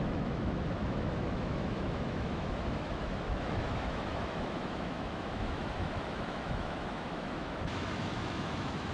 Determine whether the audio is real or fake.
fake